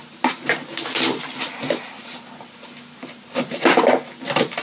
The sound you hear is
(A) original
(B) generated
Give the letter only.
A